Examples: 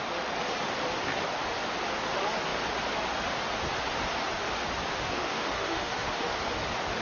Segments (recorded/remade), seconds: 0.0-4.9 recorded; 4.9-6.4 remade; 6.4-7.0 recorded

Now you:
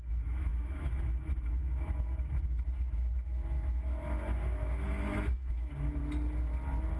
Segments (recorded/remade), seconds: 0.0-6.0 remade; 6.0-7.0 recorded

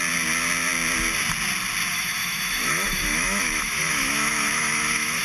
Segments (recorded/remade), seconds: 0.0-1.9 recorded; 1.9-5.2 remade

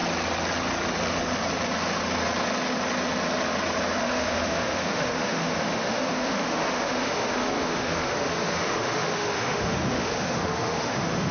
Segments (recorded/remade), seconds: 0.0-4.0 recorded; 4.0-11.3 remade

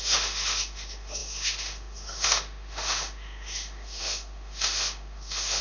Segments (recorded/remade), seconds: 0.0-5.6 remade

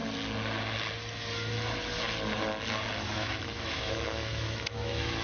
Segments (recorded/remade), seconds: 0.0-3.1 recorded; 3.1-5.2 remade